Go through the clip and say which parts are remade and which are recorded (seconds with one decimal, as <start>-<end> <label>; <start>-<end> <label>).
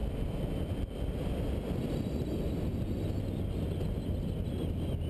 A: 0.0-5.1 recorded